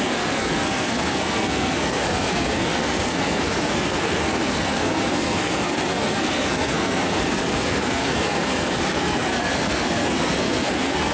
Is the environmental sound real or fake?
fake